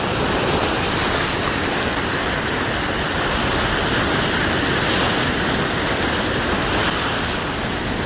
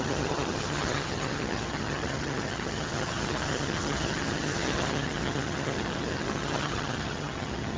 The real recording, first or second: first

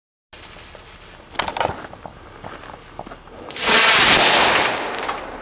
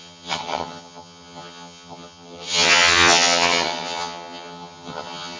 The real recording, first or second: first